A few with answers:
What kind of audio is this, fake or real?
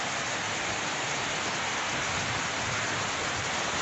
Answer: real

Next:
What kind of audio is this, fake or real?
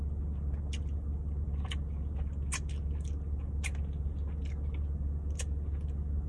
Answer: real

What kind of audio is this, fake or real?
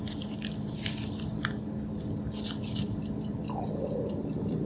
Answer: real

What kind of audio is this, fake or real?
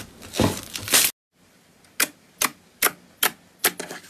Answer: real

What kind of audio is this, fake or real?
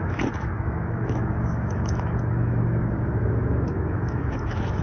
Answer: fake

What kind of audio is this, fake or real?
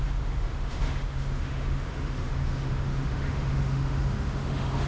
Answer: fake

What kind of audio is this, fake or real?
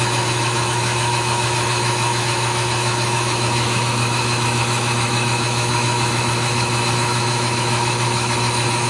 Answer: fake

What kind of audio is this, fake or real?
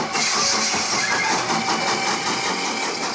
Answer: real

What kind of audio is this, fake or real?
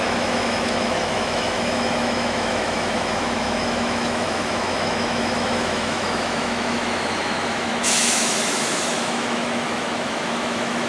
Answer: fake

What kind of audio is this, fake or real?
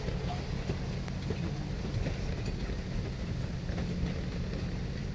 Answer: real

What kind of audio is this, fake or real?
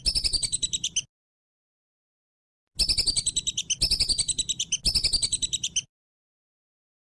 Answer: real